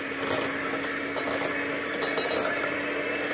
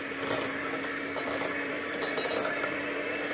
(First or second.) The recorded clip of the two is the first